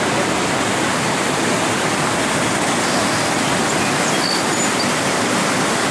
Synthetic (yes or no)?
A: no